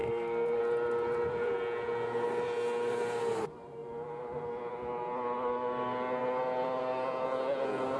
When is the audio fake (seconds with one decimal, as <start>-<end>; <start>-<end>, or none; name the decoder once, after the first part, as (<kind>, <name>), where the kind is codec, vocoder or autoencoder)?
0.0-0.6 (codec, SNAC)